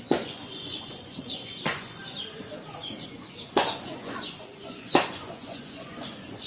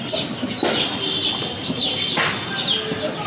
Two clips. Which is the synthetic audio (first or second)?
first